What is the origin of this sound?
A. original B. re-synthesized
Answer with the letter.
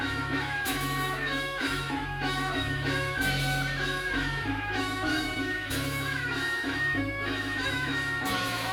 B